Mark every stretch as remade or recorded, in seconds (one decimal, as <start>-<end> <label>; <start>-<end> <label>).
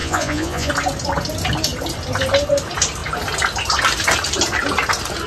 0.0-0.7 remade; 0.7-5.3 recorded